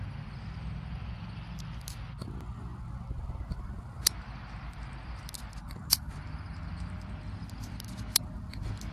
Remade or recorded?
recorded